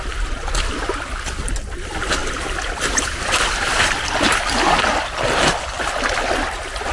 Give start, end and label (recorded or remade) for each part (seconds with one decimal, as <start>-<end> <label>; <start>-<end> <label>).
0.0-6.9 recorded